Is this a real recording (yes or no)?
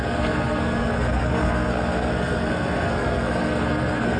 no